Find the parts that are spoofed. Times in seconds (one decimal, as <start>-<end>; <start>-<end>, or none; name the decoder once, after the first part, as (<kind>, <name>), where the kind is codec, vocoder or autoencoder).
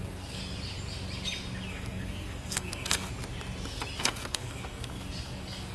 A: 0.0-0.4 (codec, SNAC); 1.7-3.1; 4.0-5.7